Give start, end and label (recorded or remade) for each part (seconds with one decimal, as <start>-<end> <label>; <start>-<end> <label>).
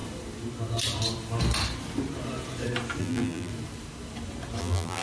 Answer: 0.0-3.0 recorded; 3.0-3.5 remade; 3.5-4.6 recorded; 4.6-5.0 remade